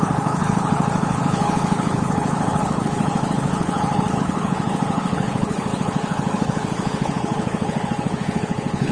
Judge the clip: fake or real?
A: fake